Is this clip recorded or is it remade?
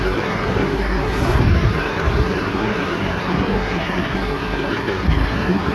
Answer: remade